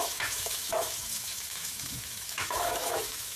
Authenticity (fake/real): fake